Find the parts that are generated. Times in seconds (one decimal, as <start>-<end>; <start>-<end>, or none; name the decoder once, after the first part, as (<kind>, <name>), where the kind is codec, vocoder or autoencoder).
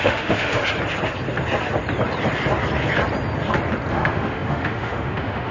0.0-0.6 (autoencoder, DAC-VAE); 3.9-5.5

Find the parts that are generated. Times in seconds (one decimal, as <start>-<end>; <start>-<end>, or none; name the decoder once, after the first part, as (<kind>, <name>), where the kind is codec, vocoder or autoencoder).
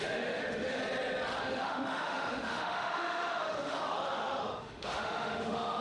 0.0-0.8 (autoencoder, DAC-VAE); 1.4-5.8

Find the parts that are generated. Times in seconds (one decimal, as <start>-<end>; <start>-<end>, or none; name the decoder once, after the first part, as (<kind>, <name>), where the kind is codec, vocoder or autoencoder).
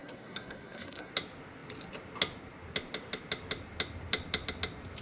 0.0-1.1 (codec, SNAC)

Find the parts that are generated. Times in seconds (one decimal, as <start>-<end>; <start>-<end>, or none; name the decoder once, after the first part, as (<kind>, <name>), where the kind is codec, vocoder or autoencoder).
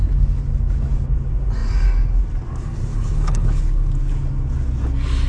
2.9-3.6 (codec, HILCodec)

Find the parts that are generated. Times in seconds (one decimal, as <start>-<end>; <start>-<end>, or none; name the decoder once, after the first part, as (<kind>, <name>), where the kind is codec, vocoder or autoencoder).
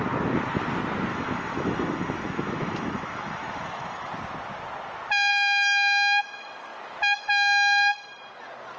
1.1-4.1 (autoencoder, DAC-VAE); 5.3-6.2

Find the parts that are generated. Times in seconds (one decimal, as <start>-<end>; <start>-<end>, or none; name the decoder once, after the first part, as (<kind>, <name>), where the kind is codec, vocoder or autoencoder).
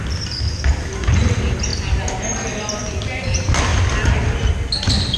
none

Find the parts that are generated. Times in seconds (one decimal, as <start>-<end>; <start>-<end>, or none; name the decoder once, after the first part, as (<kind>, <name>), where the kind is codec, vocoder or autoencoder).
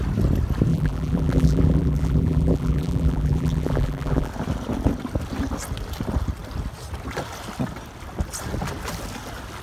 0.7-4.3 (vocoder, BigVGAN v2)